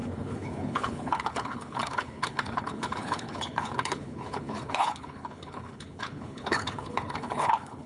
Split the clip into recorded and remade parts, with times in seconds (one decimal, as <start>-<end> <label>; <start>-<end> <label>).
0.0-7.9 remade